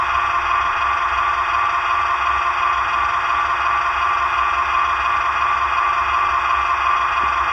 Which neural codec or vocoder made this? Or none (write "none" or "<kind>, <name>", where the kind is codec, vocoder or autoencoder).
none